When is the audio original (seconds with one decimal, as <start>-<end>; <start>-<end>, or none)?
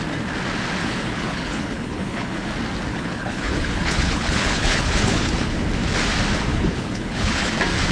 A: 0.0-0.8; 2.5-2.9; 5.6-6.5; 7.5-7.9